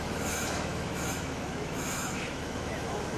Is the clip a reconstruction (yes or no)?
yes